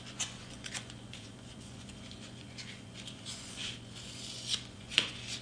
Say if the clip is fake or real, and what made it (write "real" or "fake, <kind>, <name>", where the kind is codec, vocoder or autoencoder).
fake, vocoder, Vocos